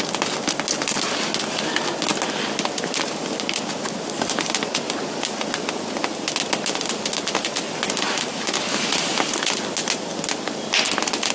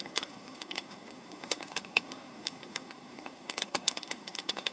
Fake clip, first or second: second